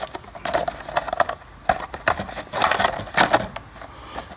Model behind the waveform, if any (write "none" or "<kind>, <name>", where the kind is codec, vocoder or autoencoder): none